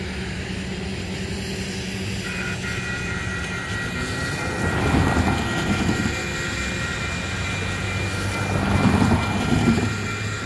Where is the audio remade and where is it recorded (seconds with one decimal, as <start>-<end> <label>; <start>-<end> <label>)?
0.0-10.5 recorded